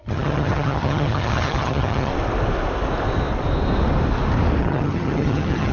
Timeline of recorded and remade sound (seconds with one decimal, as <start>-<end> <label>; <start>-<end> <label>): 0.0-2.1 remade; 2.1-4.6 recorded; 4.6-5.7 remade